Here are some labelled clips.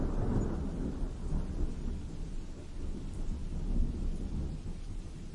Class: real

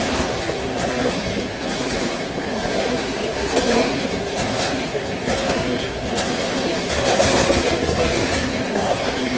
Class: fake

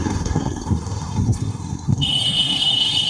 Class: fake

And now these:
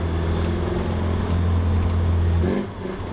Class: real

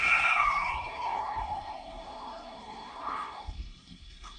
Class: fake